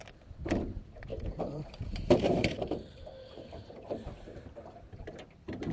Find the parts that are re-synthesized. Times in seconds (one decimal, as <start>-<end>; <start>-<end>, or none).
1.1-4.4